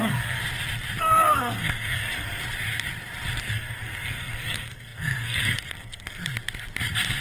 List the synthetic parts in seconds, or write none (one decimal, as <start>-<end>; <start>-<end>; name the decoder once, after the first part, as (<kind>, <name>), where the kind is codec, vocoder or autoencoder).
0.0-0.4 (codec, SNAC); 1.0-2.4; 3.4-6.2